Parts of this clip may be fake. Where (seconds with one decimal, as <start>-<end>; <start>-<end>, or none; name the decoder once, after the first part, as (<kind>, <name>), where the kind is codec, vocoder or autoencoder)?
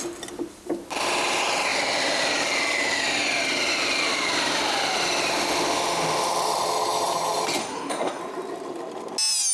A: 7.6-8.2 (codec, SNAC)